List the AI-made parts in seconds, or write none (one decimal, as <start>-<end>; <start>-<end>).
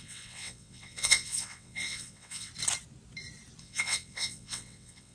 0.0-2.5; 3.6-5.1